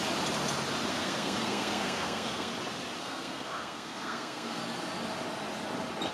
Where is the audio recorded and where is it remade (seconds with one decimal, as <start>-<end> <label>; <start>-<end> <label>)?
0.0-0.9 recorded; 0.9-2.5 remade; 2.5-3.0 recorded; 3.0-4.6 remade; 4.6-6.1 recorded